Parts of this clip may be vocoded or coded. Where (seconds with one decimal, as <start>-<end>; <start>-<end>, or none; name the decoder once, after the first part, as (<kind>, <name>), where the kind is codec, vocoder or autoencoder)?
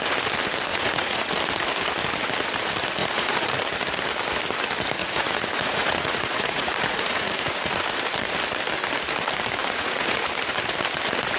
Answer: 0.7-1.3 (vocoder, Vocos); 3.0-3.5; 5.0-7.8; 9.6-10.2